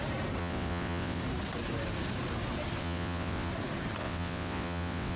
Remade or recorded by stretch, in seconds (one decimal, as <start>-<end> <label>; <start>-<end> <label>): 0.0-0.4 recorded; 0.4-1.2 remade; 1.2-2.8 recorded; 2.8-3.5 remade; 3.5-4.0 recorded; 4.0-5.2 remade